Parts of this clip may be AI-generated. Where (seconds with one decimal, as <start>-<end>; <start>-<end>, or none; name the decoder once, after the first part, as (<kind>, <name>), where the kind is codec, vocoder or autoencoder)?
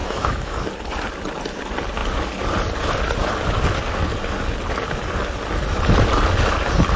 0.0-0.6 (autoencoder, DAC-VAE)